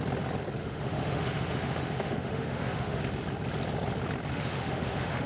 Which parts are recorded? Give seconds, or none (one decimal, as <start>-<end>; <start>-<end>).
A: 0.0-0.6; 3.0-4.3